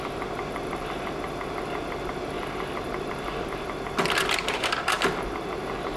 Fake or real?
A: real